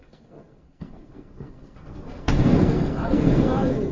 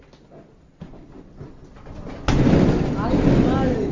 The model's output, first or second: first